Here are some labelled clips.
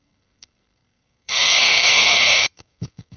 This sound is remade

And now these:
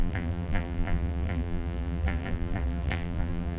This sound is remade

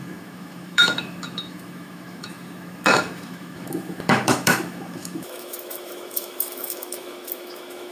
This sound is remade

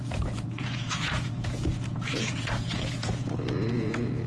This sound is remade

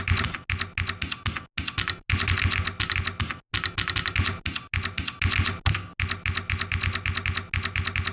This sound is recorded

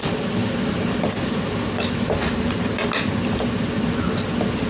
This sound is recorded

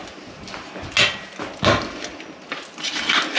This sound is recorded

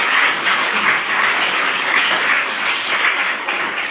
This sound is remade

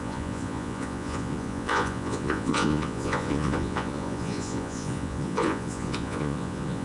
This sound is remade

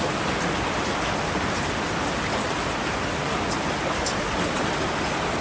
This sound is recorded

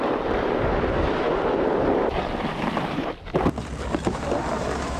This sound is recorded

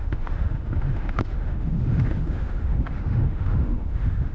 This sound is remade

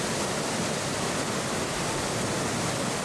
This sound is recorded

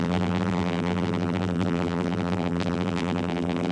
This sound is remade